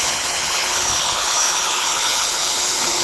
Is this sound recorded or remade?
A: remade